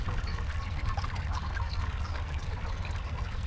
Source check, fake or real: fake